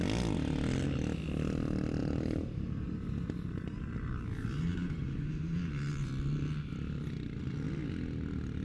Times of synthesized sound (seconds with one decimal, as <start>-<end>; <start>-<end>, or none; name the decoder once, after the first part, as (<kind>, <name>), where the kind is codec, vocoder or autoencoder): 2.0-6.1 (vocoder, BigVGAN v2)